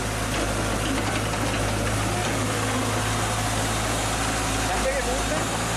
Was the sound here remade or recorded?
recorded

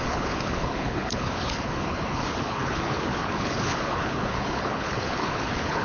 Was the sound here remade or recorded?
remade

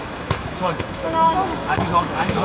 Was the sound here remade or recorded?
remade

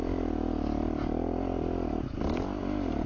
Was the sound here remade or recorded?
recorded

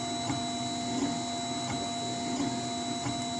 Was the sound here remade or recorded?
recorded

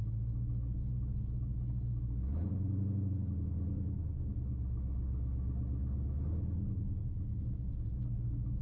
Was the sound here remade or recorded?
recorded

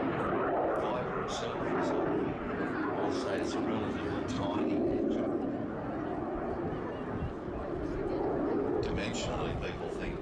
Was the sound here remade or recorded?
recorded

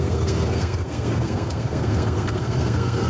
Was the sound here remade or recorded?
remade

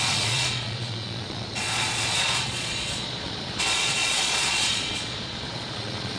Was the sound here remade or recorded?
remade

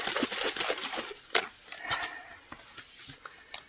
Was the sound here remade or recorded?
recorded